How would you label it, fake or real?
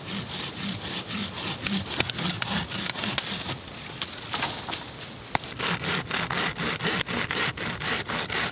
real